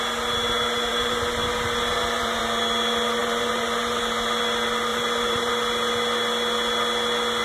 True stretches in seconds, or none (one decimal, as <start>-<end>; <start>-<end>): 0.0-0.9; 2.4-3.2; 4.0-4.9; 5.5-7.4